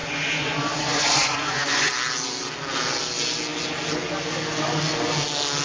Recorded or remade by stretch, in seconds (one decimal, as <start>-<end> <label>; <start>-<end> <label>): 0.0-1.9 remade; 1.9-5.6 recorded